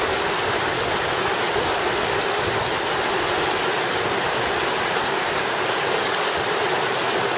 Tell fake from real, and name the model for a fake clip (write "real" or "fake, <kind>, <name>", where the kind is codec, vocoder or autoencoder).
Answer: real